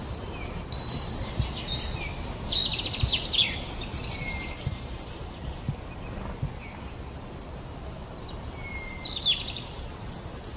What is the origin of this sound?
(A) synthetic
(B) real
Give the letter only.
B